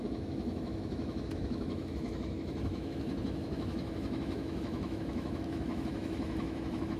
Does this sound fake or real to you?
fake